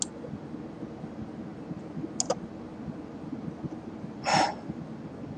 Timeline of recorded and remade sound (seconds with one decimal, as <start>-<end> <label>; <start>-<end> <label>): 0.0-5.4 recorded